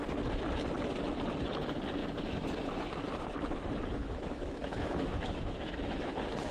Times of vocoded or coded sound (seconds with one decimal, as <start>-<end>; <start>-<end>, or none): 2.0-2.5; 4.0-6.1